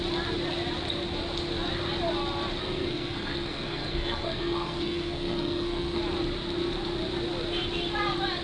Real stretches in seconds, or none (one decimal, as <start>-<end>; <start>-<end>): 0.0-2.6; 6.0-8.4